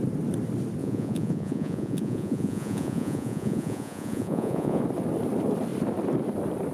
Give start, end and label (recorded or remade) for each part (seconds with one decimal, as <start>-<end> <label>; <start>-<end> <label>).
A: 0.0-0.8 recorded; 0.8-4.8 remade; 4.8-6.7 recorded